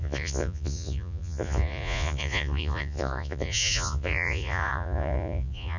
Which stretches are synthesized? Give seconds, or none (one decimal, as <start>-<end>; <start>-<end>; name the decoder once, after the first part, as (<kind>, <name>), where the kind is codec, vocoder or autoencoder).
0.0-5.8 (vocoder, Vocos)